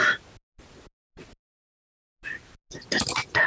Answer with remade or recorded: recorded